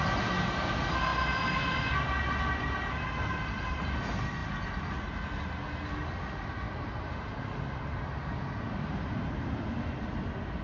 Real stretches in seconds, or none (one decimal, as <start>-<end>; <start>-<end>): 0.0-10.6